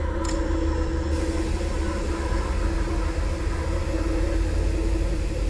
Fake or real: real